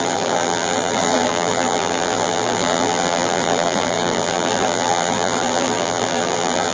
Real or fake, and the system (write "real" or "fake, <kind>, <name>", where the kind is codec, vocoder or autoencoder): fake, vocoder, BigVGAN v2